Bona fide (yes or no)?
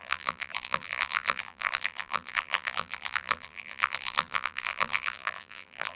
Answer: no